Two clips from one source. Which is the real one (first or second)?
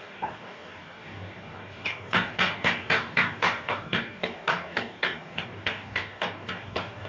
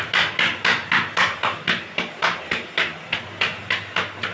second